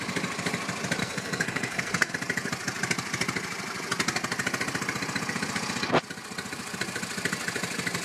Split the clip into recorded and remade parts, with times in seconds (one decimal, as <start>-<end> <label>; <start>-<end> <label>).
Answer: 0.0-1.0 recorded; 1.0-2.1 remade; 2.1-8.0 recorded